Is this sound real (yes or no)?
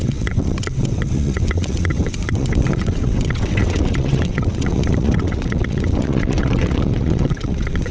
no